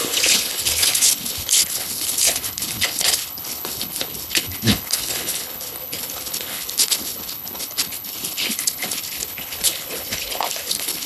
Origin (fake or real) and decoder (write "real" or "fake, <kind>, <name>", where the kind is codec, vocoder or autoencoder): fake, codec, HILCodec